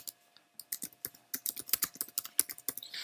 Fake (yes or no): no